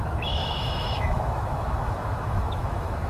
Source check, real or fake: fake